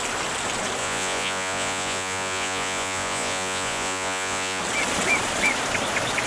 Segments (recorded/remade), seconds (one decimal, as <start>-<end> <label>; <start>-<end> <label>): 0.0-0.8 recorded; 0.8-4.6 remade; 4.6-6.3 recorded